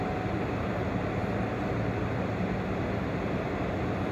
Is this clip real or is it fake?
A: real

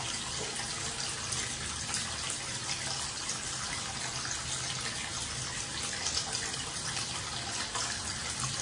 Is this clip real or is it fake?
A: real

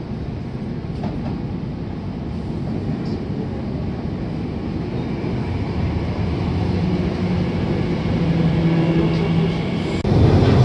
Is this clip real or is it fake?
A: real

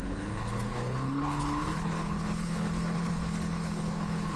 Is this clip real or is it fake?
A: fake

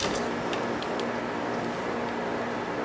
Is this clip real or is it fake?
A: real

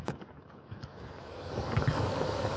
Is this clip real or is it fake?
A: fake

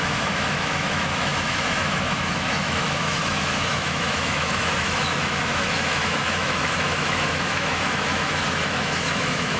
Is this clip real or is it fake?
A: fake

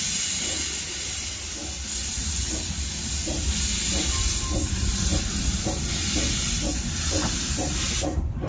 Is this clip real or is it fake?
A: real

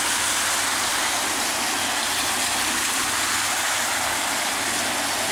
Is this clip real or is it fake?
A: real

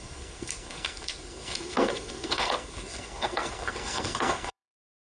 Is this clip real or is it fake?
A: fake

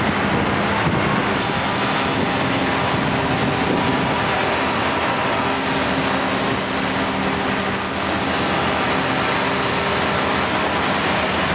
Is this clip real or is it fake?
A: real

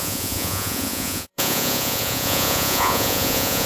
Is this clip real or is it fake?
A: fake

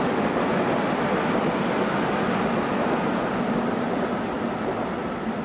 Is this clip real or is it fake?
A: real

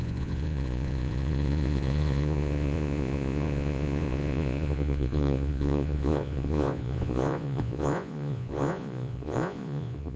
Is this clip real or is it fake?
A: fake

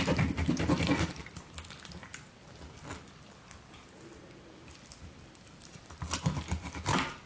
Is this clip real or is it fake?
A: real